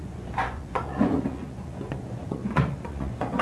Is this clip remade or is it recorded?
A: remade